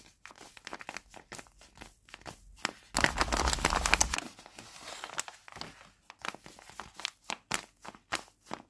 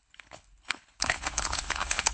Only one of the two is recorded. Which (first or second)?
first